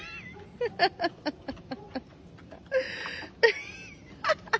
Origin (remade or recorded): recorded